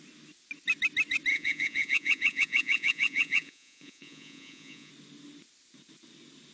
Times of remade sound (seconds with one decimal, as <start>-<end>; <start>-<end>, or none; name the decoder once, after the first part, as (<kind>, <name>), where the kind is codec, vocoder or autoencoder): 1.3-4.9 (vocoder, Vocos)